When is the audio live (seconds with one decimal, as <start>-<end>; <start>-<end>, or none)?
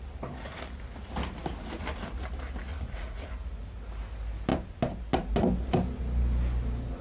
0.0-2.7; 3.3-7.0